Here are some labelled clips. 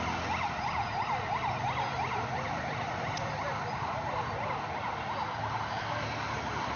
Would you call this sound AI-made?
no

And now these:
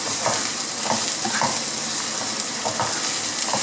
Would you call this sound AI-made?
no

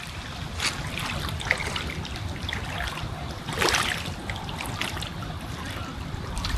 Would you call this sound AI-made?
no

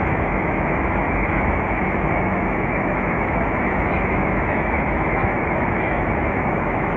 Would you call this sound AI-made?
yes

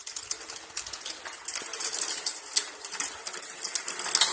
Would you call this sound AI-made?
no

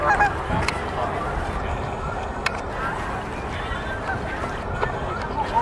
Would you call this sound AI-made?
no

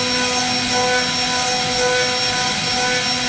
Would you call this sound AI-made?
no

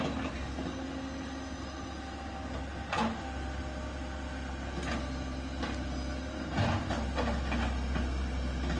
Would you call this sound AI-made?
no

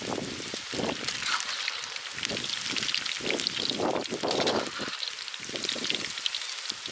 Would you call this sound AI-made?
no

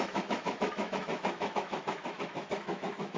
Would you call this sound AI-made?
yes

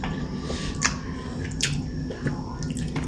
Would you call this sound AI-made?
no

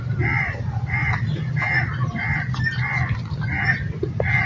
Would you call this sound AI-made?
no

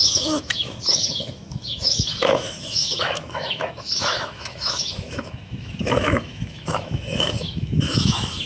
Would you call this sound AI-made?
yes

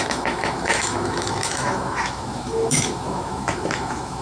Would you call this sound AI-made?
yes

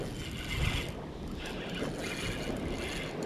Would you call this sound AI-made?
no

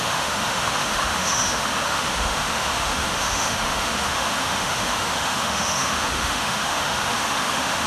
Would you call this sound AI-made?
yes